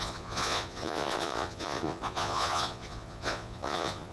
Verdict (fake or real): fake